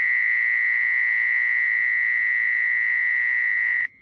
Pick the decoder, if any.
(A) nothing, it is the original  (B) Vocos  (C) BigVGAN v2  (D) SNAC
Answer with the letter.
B